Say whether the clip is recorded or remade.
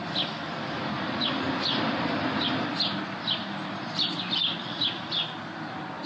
recorded